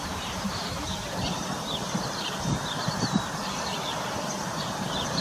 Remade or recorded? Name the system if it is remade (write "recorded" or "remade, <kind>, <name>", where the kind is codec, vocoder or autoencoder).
remade, vocoder, BigVGAN v2